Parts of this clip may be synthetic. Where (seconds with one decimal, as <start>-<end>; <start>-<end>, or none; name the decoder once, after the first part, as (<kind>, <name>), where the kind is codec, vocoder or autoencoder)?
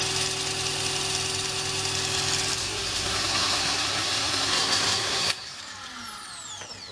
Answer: 2.6-5.6 (codec, SNAC)